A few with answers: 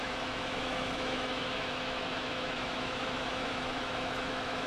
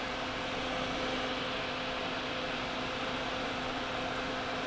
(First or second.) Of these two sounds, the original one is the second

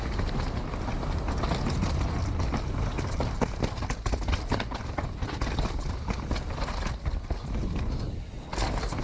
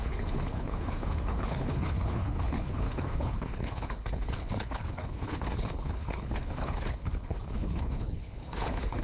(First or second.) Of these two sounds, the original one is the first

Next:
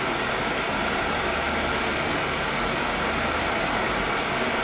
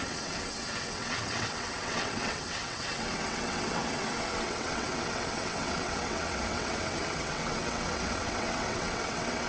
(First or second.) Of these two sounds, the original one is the first